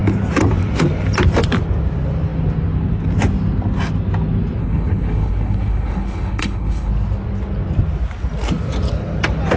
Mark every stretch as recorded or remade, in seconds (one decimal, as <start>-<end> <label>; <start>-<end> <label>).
0.0-4.6 recorded; 4.6-6.9 remade; 6.9-9.6 recorded